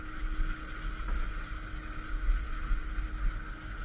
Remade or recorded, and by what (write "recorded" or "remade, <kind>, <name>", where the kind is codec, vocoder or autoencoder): recorded